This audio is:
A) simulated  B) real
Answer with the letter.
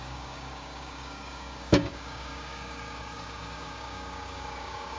A